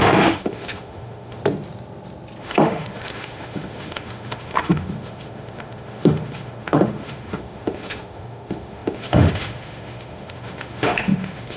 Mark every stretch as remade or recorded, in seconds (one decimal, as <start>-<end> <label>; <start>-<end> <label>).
0.0-1.4 remade; 1.4-2.4 recorded; 2.4-11.6 remade

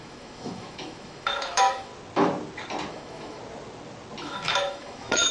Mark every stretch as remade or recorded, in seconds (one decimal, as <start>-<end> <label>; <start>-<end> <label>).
0.0-1.9 remade; 1.9-2.9 recorded; 2.9-3.4 remade; 3.4-4.2 recorded; 4.2-5.3 remade